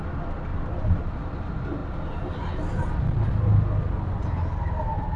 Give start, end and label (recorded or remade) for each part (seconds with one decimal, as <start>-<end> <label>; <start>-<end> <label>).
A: 0.0-0.5 recorded; 0.5-1.0 remade; 1.0-5.2 recorded